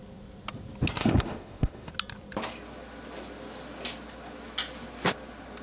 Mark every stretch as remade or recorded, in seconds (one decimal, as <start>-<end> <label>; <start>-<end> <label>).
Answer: 0.0-1.0 recorded; 1.0-1.9 remade; 1.9-5.6 recorded